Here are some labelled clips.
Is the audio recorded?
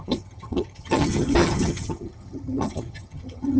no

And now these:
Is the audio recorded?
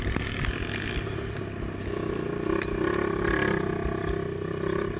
yes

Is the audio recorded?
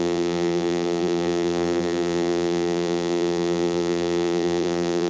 no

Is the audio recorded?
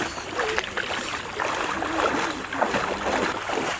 yes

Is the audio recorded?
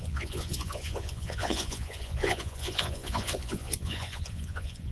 no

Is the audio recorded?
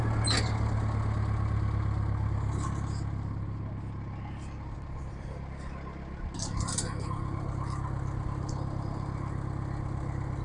yes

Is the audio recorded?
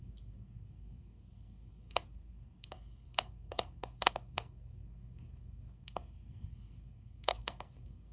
no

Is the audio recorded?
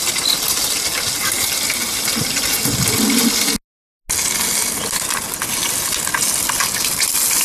yes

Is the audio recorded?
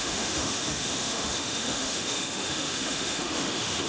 no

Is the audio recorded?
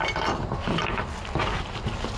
yes